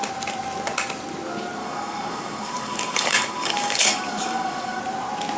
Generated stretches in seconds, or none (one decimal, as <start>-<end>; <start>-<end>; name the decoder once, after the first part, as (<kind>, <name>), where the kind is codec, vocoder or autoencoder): 1.6-4.8 (codec, DAC)